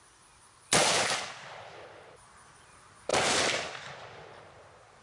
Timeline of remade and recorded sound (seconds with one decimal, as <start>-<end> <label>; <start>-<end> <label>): 0.0-3.1 remade; 3.1-5.0 recorded